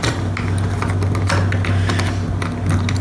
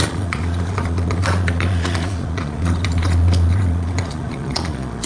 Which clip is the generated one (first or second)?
second